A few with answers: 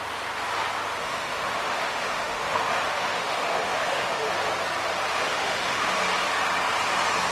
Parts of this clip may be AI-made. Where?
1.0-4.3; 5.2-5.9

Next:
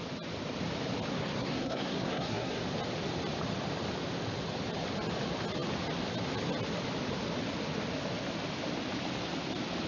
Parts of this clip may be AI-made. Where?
1.1-2.6

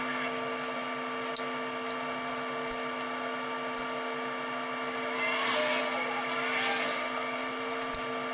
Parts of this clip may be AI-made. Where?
7.4-7.9

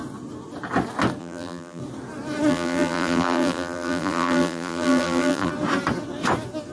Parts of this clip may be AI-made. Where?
1.2-1.8; 2.5-5.5

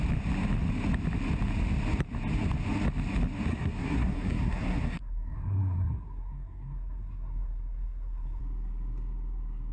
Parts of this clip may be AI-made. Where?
3.5-8.4

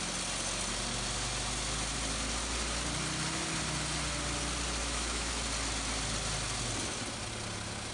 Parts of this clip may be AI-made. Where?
4.8-5.3

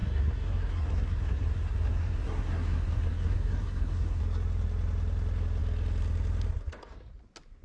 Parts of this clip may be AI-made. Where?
0.0-4.2

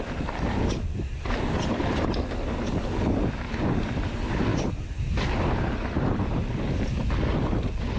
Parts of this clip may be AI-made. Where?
none